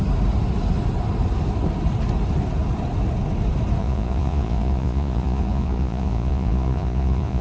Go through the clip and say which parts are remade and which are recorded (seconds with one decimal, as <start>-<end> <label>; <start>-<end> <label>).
0.0-3.8 recorded; 3.8-7.4 remade